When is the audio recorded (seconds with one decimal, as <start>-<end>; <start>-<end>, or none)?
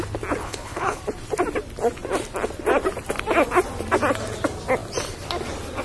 0.0-0.4; 1.0-5.8